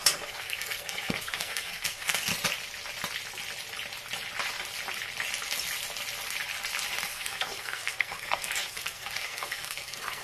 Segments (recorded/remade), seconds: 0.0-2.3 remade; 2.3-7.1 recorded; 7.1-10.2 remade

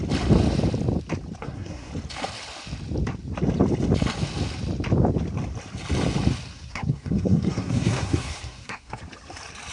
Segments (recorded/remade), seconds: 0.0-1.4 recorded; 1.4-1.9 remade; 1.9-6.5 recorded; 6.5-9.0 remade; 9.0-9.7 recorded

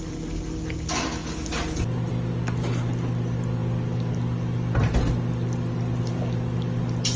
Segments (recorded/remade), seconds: 0.0-7.2 recorded

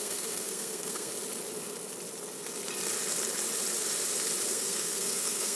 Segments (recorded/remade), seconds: 0.0-1.1 remade; 1.1-4.5 recorded; 4.5-5.6 remade

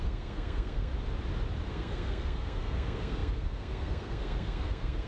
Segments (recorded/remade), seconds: 0.0-0.9 remade; 0.9-1.7 recorded; 1.7-5.1 remade

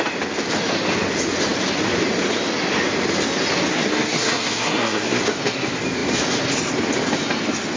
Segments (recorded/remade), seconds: 0.0-3.7 recorded; 3.7-5.2 remade; 5.2-7.8 recorded

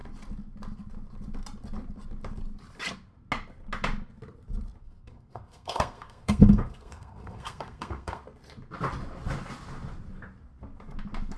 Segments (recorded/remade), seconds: 0.0-4.8 recorded; 4.8-8.2 remade; 8.2-11.4 recorded